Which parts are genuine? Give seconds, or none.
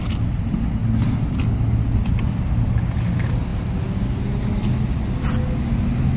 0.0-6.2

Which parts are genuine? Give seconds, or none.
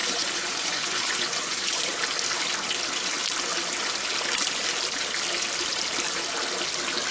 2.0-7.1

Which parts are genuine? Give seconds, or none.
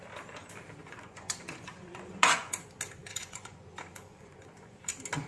0.0-0.8; 2.6-3.0; 4.8-5.3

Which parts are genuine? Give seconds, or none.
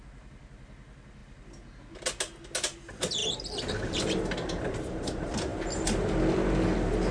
0.0-7.1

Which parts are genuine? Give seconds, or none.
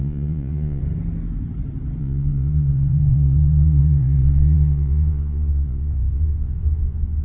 0.8-2.0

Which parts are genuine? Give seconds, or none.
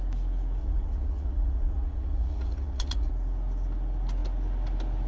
0.0-0.6; 3.1-5.1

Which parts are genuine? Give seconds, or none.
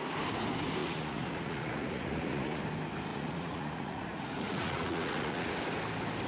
0.0-0.8; 2.6-3.1; 5.6-6.3